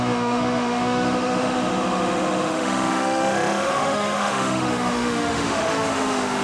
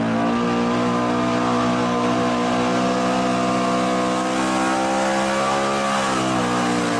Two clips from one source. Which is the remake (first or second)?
first